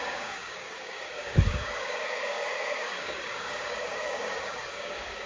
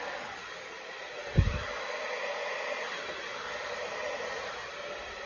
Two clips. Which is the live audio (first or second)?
second